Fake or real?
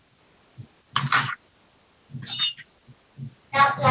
real